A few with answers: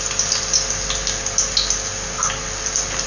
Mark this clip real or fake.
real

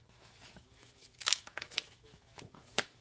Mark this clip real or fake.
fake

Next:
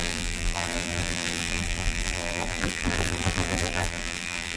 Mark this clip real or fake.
fake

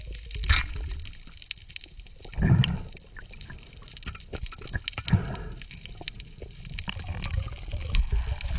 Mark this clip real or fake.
real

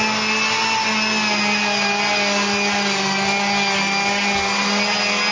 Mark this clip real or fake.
real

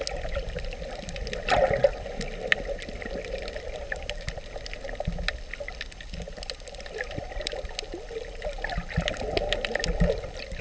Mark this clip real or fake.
real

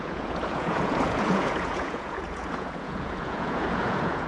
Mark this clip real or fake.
fake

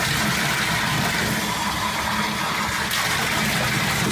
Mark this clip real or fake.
real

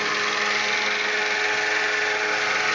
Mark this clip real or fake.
real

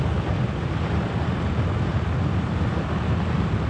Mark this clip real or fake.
real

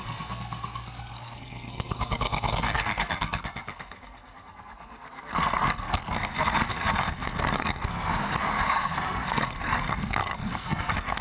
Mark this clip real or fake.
fake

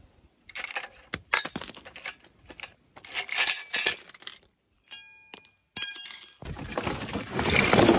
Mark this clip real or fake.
real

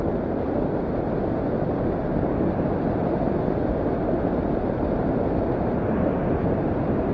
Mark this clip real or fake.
real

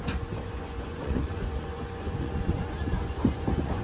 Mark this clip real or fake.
fake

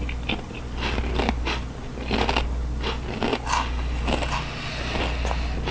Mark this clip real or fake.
real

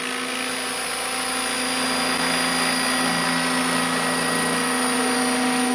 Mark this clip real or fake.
real